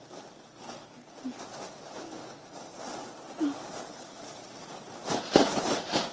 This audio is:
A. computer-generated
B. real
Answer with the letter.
B